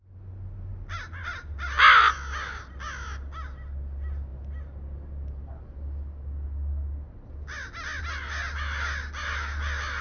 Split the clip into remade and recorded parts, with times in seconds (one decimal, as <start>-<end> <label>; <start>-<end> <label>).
0.0-10.0 recorded